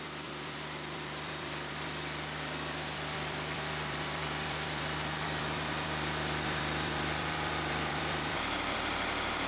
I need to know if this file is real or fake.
fake